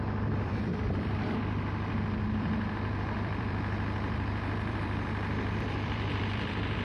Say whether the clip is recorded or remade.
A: remade